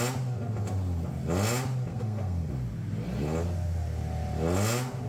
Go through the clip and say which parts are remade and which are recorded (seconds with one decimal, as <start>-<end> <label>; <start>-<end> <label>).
0.0-1.9 recorded; 1.9-2.5 remade; 2.5-5.1 recorded